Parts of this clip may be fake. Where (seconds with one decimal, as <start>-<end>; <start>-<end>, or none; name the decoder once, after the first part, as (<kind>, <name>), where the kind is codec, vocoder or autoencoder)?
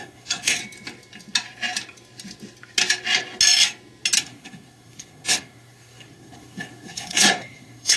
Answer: 0.0-0.6 (codec, SNAC); 4.2-8.0